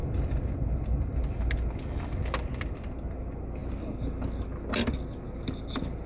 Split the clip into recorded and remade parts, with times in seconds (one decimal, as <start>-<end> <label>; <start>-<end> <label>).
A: 0.0-6.1 recorded

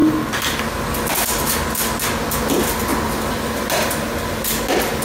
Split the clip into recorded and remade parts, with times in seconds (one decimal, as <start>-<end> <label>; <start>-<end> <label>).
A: 0.0-5.0 recorded

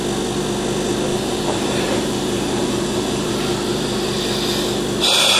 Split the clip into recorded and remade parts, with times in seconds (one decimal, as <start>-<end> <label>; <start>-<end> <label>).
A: 0.0-1.1 recorded; 1.1-3.3 remade; 3.3-5.4 recorded